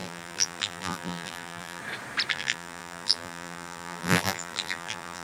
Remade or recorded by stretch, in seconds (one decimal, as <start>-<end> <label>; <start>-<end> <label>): 0.0-1.8 remade; 1.8-2.3 recorded; 2.3-5.2 remade